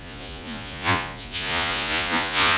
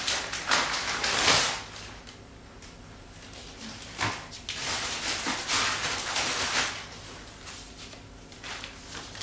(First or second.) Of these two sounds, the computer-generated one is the first